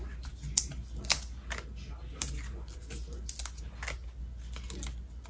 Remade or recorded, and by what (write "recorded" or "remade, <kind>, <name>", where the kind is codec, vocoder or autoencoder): recorded